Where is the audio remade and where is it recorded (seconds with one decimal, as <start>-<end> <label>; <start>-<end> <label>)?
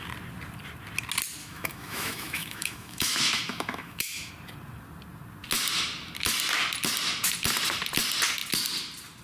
0.0-1.4 recorded; 1.4-4.3 remade; 4.3-9.2 recorded